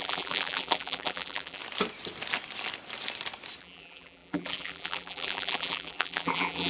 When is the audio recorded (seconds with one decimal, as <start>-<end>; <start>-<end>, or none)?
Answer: 1.6-3.6